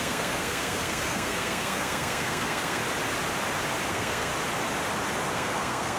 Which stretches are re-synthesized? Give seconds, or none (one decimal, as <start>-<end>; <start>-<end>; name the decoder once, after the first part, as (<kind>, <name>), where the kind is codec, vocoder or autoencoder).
0.0-2.8 (codec, SNAC); 3.9-4.3; 5.3-6.0